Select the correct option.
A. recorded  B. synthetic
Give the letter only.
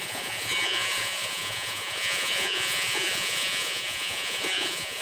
B